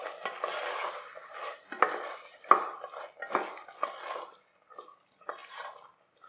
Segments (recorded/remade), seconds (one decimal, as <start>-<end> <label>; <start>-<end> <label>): 0.0-6.3 recorded